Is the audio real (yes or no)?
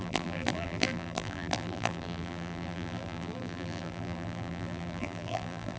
no